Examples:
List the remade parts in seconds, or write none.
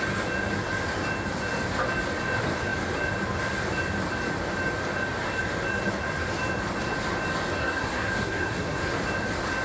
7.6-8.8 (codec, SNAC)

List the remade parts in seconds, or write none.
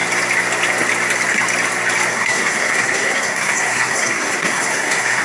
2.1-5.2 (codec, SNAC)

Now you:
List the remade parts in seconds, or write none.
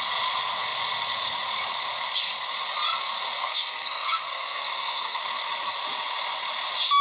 3.4-5.2 (codec, SNAC)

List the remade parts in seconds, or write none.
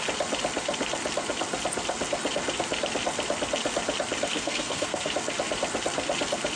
4.3-5.1 (codec, SNAC)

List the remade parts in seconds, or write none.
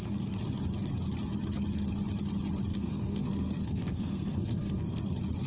2.7-5.0 (codec, SNAC)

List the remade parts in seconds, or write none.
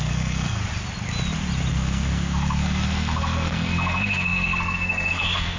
0.0-0.6 (codec, SNAC); 1.7-5.6